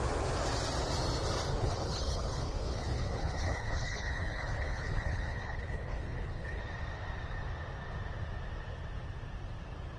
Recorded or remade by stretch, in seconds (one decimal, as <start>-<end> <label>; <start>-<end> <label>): 0.0-1.5 recorded; 1.5-6.6 remade; 6.6-10.0 recorded